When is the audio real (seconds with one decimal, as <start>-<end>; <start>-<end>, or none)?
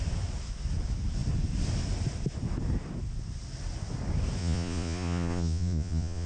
0.0-4.4